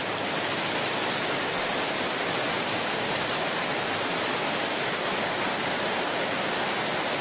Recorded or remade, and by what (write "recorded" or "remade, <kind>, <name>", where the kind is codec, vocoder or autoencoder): recorded